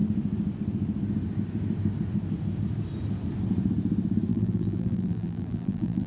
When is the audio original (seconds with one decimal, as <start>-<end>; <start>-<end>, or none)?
0.0-4.3

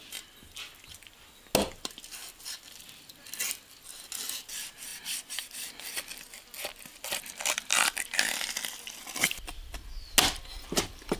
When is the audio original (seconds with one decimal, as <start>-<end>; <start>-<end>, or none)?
0.0-11.2

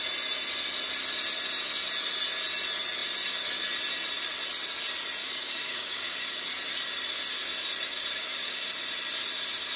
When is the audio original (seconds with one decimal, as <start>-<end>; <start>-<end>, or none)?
0.0-5.2; 6.5-7.9; 8.7-9.8

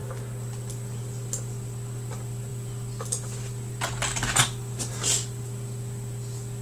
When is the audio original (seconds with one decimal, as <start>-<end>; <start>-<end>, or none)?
0.0-6.6

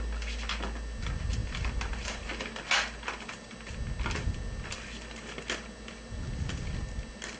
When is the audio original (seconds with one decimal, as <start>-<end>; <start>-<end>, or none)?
0.0-7.4